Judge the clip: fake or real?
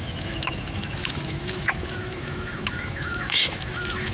fake